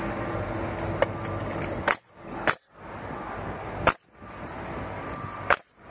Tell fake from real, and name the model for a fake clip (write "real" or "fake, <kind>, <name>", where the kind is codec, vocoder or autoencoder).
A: real